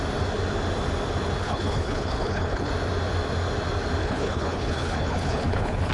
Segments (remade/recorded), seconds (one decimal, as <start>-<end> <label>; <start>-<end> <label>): 0.0-1.4 recorded; 1.4-2.7 remade; 2.7-4.0 recorded; 4.0-5.9 remade